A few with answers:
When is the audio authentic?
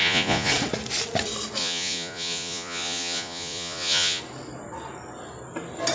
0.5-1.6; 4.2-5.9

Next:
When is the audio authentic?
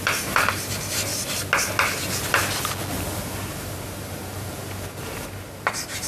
1.1-3.2